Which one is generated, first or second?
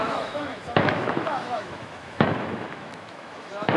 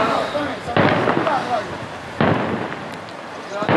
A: first